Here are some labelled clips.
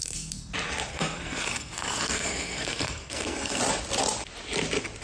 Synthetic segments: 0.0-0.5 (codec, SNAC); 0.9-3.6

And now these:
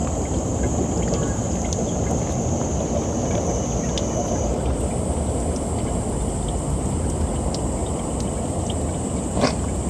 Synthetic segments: none

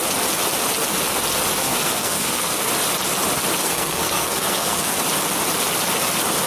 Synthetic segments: 1.6-2.7 (codec, SNAC); 3.6-5.0

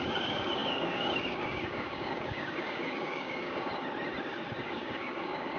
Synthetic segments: 0.0-3.7 (codec, DAC); 4.6-5.6

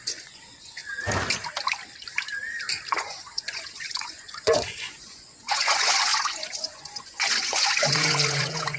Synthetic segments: 0.0-0.8 (vocoder, Vocos); 3.0-8.8

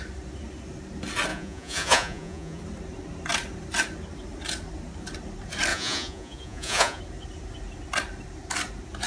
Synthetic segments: 1.3-2.6 (vocoder, Vocos); 5.7-7.0

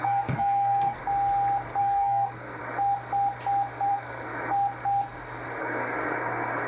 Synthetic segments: 0.0-1.0 (codec, SNAC); 1.8-2.6; 3.9-4.3; 5.6-6.7